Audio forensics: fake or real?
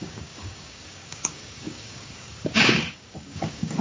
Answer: fake